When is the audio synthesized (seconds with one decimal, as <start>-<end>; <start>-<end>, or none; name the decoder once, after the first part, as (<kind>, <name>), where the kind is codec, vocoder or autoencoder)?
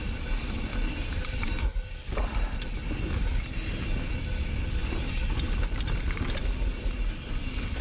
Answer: none